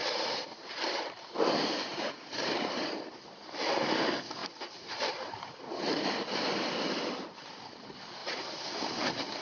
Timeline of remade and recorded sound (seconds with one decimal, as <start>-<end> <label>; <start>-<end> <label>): 0.0-1.3 remade; 1.3-1.9 recorded; 1.9-2.9 remade; 2.9-4.4 recorded; 4.4-7.6 remade; 7.6-8.2 recorded; 8.2-8.7 remade; 8.7-9.4 recorded